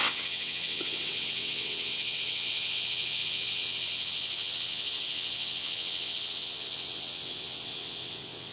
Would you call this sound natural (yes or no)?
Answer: no